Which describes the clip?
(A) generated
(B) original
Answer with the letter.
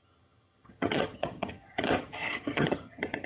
A